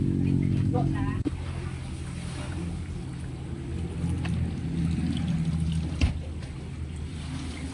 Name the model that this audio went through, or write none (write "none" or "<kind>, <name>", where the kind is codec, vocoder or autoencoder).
none